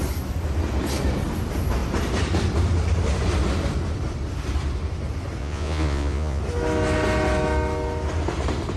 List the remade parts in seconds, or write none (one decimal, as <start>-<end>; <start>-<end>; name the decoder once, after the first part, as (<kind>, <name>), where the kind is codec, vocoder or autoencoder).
5.4-6.4 (vocoder, Vocos)